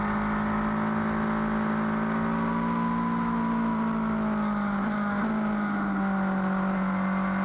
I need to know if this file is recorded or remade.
recorded